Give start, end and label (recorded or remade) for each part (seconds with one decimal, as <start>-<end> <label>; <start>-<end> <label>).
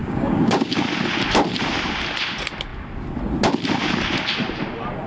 0.0-0.8 remade; 0.8-5.1 recorded